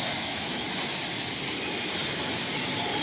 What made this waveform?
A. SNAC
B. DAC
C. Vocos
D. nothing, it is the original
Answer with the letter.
D